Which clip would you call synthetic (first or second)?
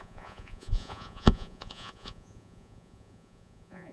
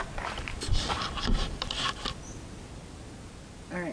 first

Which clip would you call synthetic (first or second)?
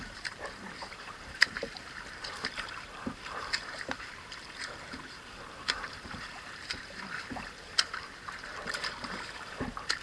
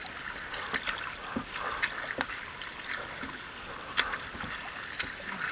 first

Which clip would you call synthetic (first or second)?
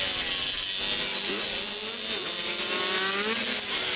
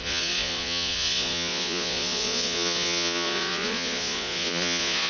second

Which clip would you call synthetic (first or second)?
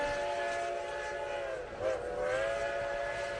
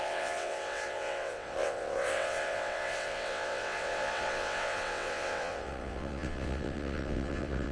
second